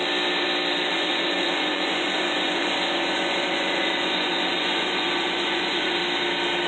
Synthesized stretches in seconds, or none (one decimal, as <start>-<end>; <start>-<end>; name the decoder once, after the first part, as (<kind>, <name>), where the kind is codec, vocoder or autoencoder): 0.9-6.0 (vocoder, Vocos)